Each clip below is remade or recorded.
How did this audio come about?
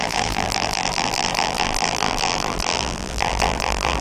remade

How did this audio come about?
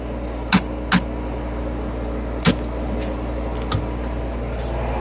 recorded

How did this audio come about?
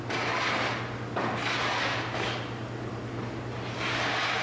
recorded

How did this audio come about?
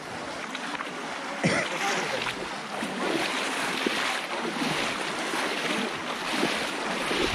recorded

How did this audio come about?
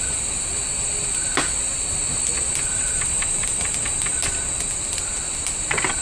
recorded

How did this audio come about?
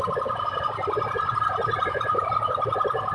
recorded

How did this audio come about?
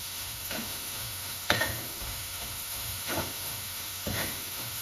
remade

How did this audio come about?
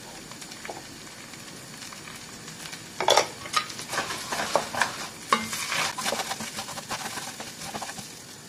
recorded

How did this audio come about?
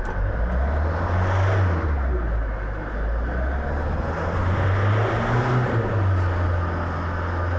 recorded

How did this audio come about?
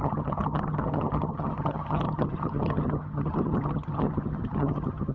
remade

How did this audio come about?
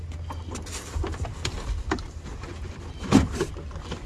recorded